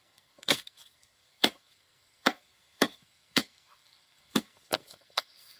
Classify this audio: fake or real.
fake